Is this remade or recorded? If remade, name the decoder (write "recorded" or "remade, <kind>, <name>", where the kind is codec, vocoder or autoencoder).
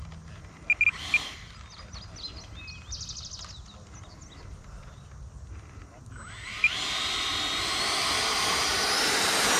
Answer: recorded